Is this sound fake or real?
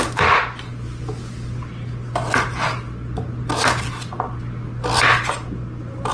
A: real